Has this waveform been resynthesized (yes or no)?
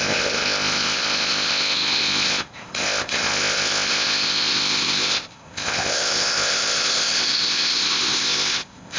yes